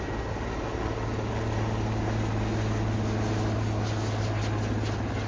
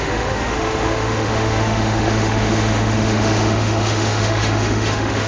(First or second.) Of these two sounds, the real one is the first